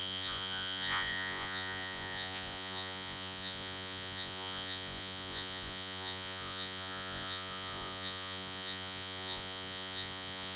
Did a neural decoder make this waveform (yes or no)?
yes